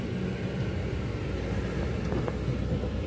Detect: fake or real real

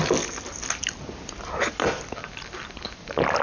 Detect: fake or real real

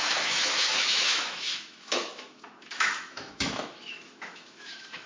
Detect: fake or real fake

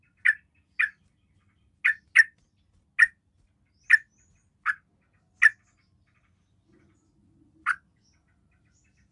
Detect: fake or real real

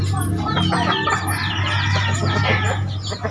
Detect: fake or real real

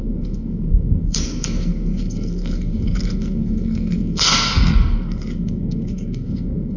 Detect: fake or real fake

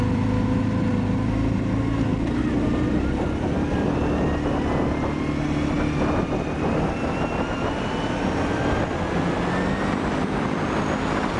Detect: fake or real real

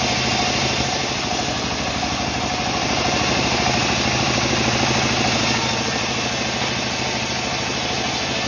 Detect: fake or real real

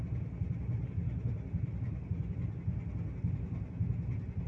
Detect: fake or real real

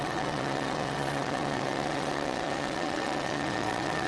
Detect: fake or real fake